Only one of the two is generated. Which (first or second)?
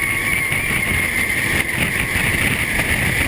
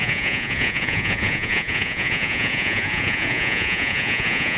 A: second